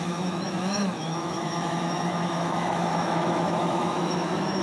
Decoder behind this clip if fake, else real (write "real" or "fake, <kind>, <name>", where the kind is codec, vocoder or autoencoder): fake, autoencoder, DAC-VAE